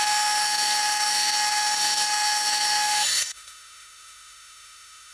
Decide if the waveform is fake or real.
fake